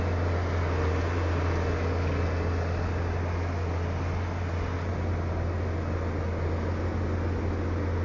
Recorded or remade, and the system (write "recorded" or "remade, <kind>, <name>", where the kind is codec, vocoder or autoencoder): recorded